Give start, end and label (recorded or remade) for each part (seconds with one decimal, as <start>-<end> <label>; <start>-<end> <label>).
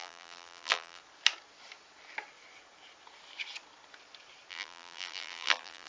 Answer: 0.0-1.0 remade; 1.0-4.5 recorded; 4.5-5.9 remade